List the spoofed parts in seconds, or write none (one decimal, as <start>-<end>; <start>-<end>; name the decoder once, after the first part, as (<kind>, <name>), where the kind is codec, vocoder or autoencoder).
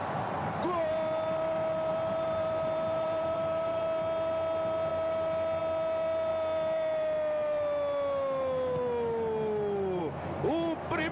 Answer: 1.9-3.8 (vocoder, BigVGAN v2)